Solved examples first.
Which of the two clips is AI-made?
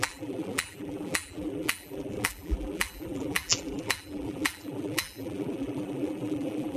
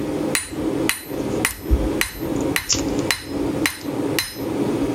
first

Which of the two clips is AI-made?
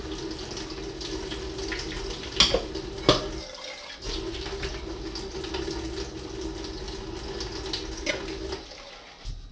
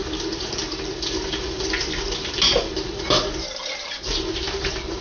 second